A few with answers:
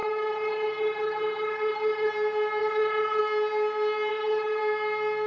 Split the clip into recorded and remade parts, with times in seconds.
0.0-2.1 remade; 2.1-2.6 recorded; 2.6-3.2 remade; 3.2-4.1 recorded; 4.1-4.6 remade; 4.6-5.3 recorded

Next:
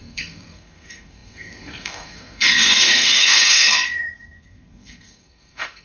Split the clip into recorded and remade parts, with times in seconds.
0.0-5.8 remade

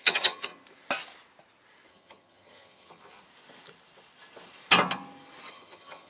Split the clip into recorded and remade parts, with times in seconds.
0.0-0.5 remade; 0.5-1.9 recorded; 1.9-3.0 remade; 3.0-5.5 recorded; 5.5-6.1 remade

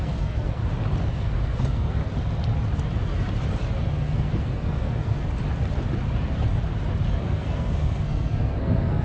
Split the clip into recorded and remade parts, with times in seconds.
0.0-0.6 remade; 0.6-1.1 recorded; 1.1-2.0 remade; 2.0-3.8 recorded; 3.8-5.2 remade; 5.2-7.2 recorded; 7.2-9.0 remade

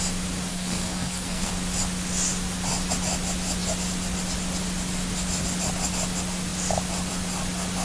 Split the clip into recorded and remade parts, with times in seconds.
0.0-0.5 recorded; 0.5-1.5 remade; 1.5-7.8 recorded

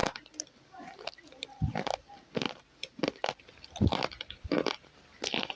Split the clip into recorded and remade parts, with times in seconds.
0.0-5.6 recorded